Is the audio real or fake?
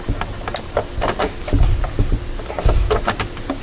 real